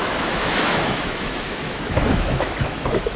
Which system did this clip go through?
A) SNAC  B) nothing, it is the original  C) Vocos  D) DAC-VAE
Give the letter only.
D